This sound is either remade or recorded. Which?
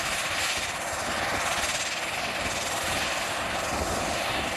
recorded